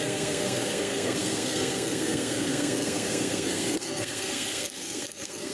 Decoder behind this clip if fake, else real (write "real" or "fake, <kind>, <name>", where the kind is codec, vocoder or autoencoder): fake, codec, SNAC